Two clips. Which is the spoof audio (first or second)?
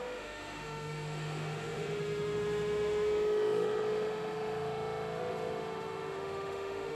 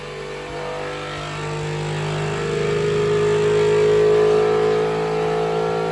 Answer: first